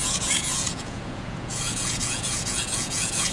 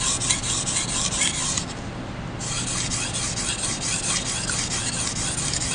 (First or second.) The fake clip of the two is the first